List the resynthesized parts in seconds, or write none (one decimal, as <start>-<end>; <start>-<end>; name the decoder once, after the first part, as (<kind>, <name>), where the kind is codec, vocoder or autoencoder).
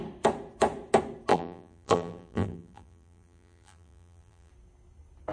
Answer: 1.3-4.5 (vocoder, BigVGAN v2)